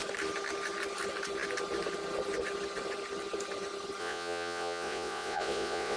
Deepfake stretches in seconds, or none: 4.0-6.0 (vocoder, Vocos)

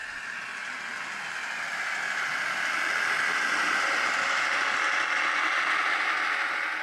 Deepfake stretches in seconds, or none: none

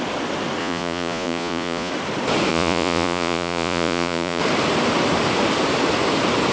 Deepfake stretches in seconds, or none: 0.6-1.9 (vocoder, Vocos); 2.5-4.4

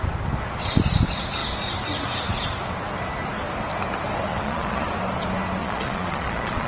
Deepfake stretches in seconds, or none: 4.3-4.9 (vocoder, Vocos); 5.6-6.7

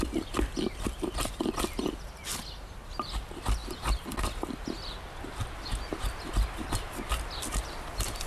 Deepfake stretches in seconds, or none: none

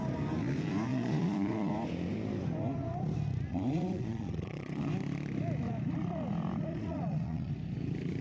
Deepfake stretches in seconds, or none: 0.9-1.7 (vocoder, Vocos); 3.5-4.9; 6.7-7.5